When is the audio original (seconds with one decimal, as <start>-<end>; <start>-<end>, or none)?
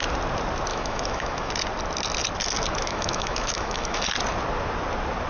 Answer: 0.0-0.7; 1.5-2.8; 4.0-5.3